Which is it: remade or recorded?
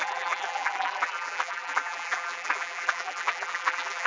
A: remade